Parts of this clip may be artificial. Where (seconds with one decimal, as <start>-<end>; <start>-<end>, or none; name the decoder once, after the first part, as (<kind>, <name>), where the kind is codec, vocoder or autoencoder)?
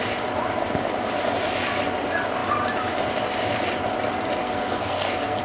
4.4-5.4 (codec, SNAC)